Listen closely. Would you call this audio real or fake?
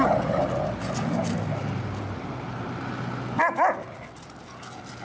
real